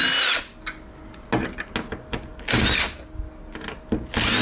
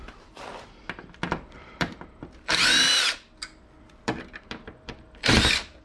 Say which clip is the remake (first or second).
second